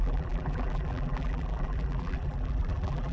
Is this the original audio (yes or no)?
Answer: no